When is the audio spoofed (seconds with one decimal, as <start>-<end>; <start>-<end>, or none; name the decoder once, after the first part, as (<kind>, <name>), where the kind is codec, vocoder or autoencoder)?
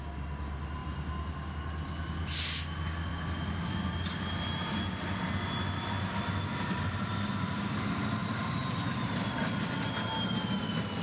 6.5-7.6 (vocoder, BigVGAN v2); 8.2-9.9